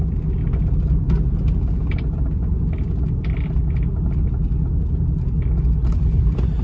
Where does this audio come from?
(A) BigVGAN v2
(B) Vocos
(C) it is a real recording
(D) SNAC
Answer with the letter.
C